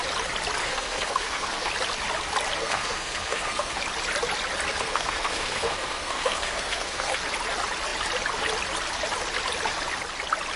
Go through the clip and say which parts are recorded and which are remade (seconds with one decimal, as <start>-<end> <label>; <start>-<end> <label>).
0.0-0.6 recorded; 0.6-1.7 remade; 1.7-2.6 recorded; 2.6-3.8 remade; 3.8-4.7 recorded; 4.7-7.2 remade; 7.2-10.6 recorded